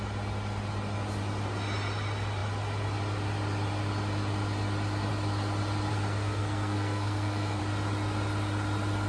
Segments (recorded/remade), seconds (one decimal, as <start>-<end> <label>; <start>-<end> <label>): 0.0-5.9 recorded; 5.9-7.6 remade; 7.6-9.1 recorded